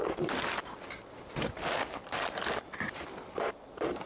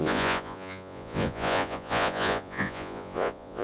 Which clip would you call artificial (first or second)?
second